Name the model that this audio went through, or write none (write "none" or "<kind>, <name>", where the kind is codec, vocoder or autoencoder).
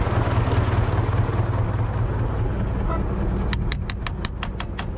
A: none